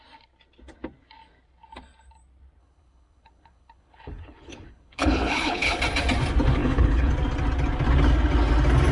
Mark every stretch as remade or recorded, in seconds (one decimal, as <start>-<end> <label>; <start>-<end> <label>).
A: 0.0-2.6 recorded; 2.6-5.8 remade; 5.8-6.6 recorded; 6.6-7.1 remade; 7.1-8.9 recorded